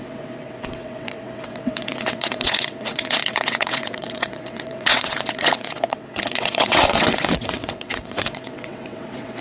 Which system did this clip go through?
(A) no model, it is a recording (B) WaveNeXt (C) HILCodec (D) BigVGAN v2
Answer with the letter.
B